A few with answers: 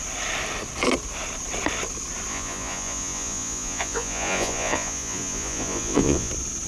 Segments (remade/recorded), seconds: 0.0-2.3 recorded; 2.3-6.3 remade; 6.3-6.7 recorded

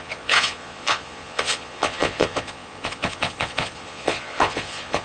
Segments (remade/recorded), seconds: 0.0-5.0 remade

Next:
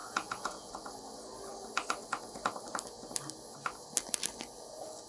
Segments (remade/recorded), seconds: 0.0-0.7 remade; 0.7-5.1 recorded

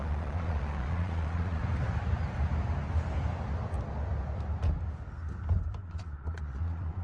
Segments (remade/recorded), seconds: 0.0-1.6 remade; 1.6-5.8 recorded; 5.8-7.0 remade